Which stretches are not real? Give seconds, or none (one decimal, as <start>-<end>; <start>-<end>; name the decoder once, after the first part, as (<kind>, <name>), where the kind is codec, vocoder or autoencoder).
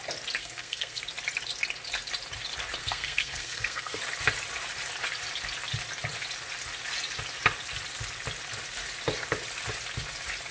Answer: 0.4-1.0 (codec, SNAC); 2.8-4.0